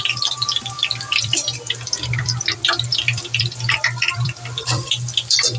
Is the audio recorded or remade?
remade